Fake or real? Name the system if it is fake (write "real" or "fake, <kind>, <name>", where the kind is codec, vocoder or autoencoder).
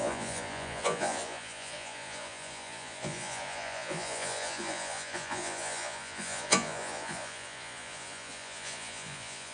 fake, vocoder, Vocos